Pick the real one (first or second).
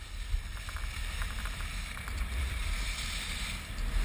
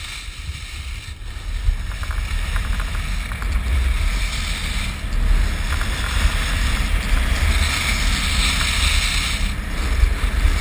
second